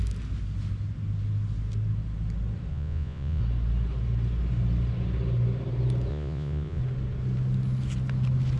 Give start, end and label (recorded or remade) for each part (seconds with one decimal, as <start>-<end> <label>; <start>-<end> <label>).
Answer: 0.0-2.7 recorded; 2.7-3.4 remade; 3.4-6.1 recorded; 6.1-6.8 remade; 6.8-8.6 recorded